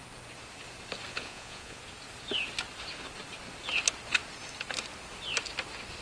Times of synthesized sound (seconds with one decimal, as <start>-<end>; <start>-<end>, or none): 1.1-1.8